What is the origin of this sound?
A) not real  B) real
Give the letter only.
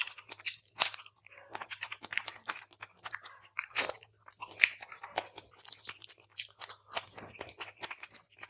B